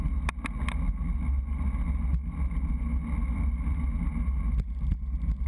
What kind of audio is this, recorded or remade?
recorded